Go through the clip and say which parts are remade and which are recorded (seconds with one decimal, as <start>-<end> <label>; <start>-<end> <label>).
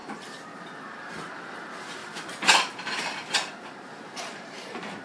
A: 0.0-2.0 remade; 2.0-3.7 recorded; 3.7-5.0 remade